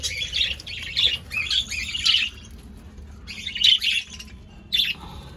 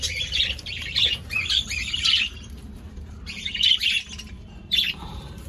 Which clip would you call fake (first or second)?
second